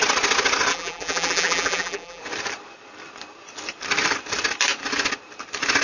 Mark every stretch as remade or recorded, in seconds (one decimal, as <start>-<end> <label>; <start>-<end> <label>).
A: 0.0-0.7 recorded; 0.7-2.2 remade; 2.2-5.8 recorded